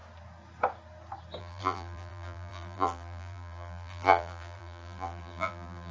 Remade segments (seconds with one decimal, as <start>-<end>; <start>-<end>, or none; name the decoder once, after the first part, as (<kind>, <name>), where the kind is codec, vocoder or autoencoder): 1.4-5.9 (vocoder, BigVGAN v2)